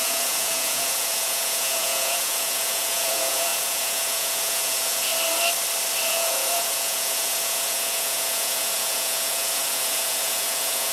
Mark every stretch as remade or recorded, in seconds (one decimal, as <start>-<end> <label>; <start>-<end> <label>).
0.0-5.1 remade; 5.1-6.1 recorded; 6.1-10.9 remade